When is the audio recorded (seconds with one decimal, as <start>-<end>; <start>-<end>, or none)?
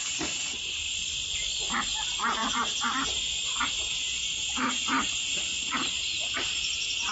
1.0-1.8; 5.5-6.3